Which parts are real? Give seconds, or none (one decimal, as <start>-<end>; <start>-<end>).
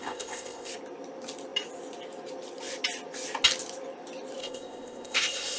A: 0.7-4.4